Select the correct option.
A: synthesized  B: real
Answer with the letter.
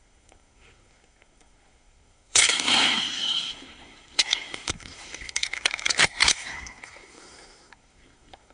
A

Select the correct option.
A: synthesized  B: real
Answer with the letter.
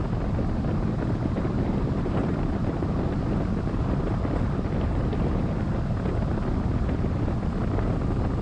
B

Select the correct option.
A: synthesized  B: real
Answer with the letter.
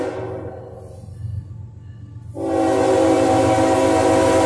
B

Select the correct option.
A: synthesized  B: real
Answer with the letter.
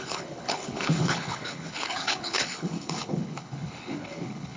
A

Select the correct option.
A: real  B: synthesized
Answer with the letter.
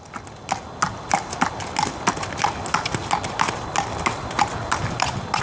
A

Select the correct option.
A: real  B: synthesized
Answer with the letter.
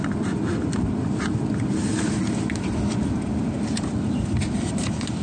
A